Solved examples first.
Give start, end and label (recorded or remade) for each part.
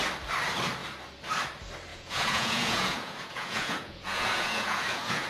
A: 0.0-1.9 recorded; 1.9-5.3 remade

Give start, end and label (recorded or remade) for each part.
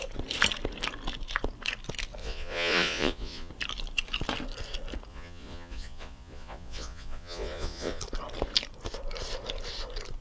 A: 0.0-2.2 recorded; 2.2-3.5 remade; 3.5-5.1 recorded; 5.1-8.0 remade; 8.0-10.2 recorded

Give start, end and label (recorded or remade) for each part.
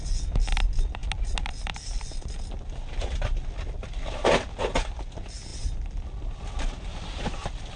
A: 0.0-7.8 recorded